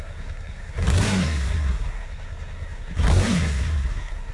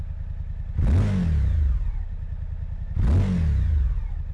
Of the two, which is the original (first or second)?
second